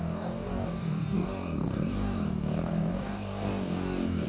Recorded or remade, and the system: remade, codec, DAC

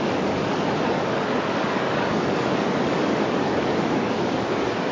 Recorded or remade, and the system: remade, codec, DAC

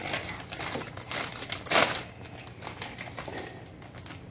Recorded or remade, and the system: recorded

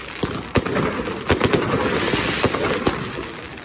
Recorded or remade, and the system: recorded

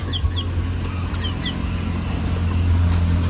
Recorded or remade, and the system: recorded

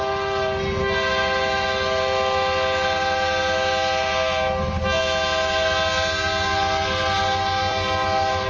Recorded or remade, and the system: recorded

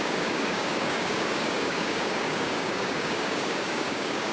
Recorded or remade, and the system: remade, codec, DAC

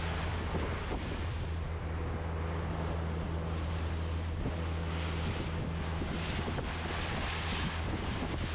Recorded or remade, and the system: recorded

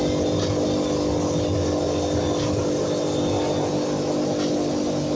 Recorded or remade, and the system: recorded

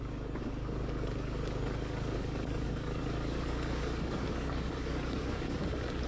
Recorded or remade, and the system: remade, codec, DAC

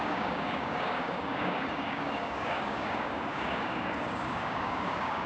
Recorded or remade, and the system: remade, codec, DAC